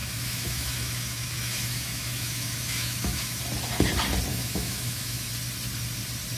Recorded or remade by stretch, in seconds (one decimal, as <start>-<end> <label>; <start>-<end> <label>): 0.0-3.4 remade; 3.4-4.3 recorded; 4.3-5.3 remade; 5.3-6.4 recorded